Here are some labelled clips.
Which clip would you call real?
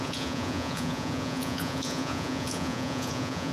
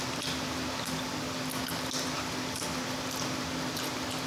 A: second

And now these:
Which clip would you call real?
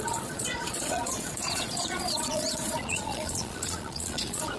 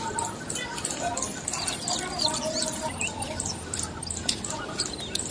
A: second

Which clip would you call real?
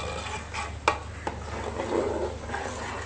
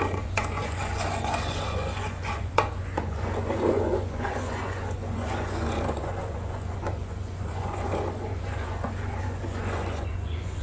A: first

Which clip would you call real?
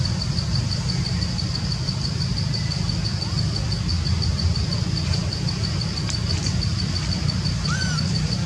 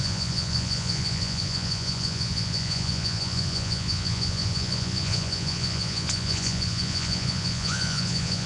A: first